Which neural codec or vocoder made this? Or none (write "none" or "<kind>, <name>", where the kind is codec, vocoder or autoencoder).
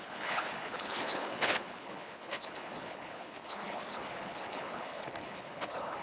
codec, HILCodec